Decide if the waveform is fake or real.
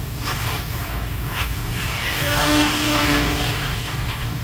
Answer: fake